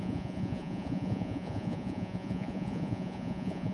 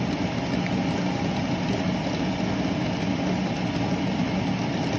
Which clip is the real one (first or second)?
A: second